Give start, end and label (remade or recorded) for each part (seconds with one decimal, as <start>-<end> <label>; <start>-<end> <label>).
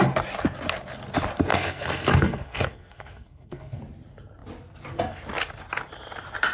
0.0-1.5 recorded; 1.5-3.8 remade; 3.8-6.5 recorded